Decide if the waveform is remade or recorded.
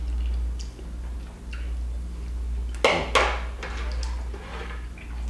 recorded